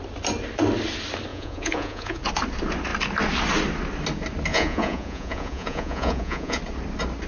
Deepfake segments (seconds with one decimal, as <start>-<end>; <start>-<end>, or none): 1.3-2.2; 4.5-6.6

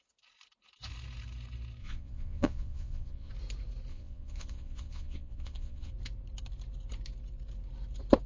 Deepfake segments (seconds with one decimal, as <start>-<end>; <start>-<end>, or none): 1.8-3.3; 3.9-5.9

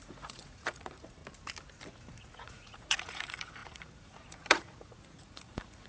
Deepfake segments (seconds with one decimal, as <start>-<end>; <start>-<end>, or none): 0.0-1.2; 2.2-5.9

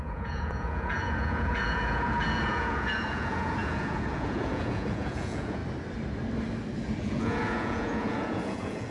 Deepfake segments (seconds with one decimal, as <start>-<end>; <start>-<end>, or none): 0.0-5.6; 7.0-8.9

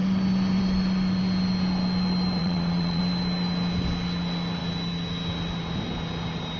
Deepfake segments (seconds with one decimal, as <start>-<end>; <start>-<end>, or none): 2.4-3.0

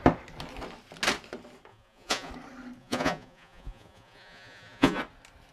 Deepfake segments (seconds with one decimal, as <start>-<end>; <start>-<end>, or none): 1.7-2.3; 2.8-5.0

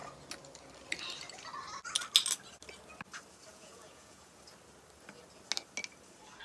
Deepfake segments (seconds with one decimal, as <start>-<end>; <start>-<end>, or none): 3.5-4.4